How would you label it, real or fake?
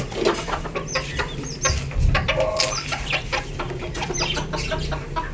real